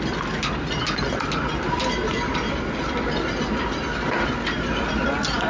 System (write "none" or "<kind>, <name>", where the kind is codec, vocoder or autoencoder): none